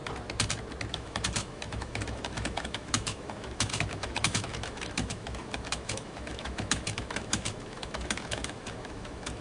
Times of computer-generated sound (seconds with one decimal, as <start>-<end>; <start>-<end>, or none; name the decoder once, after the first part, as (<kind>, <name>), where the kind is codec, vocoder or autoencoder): 0.9-9.4 (autoencoder, DAC-VAE)

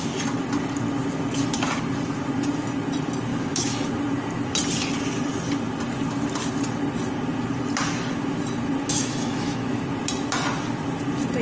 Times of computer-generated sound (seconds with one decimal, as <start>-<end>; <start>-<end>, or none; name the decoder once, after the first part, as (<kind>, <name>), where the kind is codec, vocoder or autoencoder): 3.3-3.9 (autoencoder, DAC-VAE); 8.9-9.8

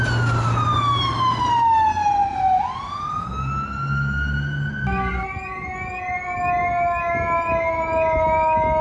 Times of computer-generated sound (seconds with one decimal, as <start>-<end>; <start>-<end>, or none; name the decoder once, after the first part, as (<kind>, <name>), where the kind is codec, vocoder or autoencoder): none

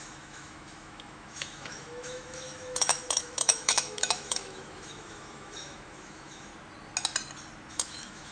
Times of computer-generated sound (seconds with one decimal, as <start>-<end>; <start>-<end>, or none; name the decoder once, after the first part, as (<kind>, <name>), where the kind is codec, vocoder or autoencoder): 0.0-6.5 (autoencoder, DAC-VAE); 7.7-8.3